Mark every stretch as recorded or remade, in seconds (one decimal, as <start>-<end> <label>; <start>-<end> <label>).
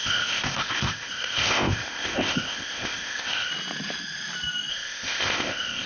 0.0-3.5 remade; 3.5-4.7 recorded; 4.7-5.9 remade